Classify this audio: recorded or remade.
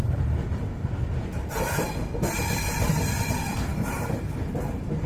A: remade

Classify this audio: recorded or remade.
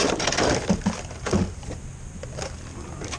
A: recorded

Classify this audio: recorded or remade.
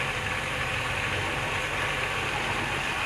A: remade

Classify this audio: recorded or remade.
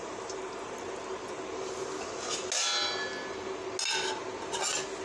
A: recorded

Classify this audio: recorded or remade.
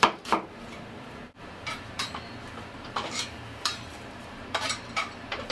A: remade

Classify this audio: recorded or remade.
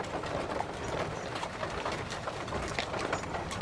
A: remade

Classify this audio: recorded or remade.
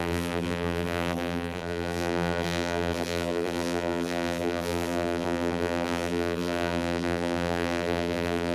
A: remade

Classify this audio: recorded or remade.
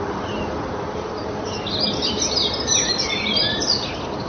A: remade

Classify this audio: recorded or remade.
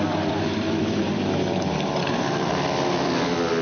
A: remade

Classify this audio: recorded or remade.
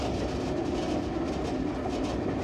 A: recorded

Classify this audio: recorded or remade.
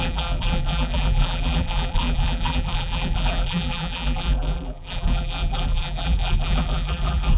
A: remade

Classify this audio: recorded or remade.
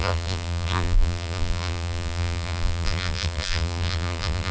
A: remade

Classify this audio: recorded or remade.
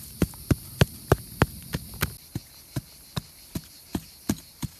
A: recorded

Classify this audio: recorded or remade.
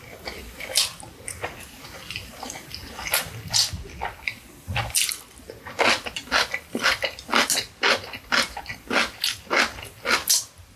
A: recorded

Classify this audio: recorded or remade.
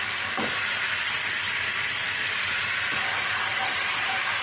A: recorded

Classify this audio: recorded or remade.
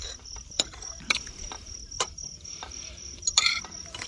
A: remade